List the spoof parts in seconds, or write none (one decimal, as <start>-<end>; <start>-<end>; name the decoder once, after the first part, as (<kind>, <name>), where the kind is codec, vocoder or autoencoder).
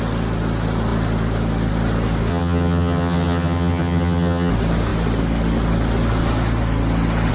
2.3-4.5 (vocoder, HiFi-GAN)